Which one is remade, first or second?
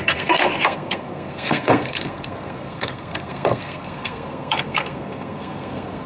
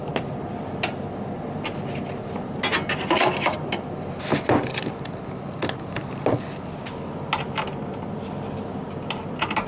first